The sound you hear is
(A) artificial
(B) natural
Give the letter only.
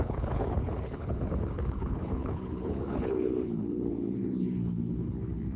A